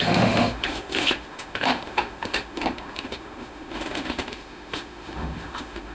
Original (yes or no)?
no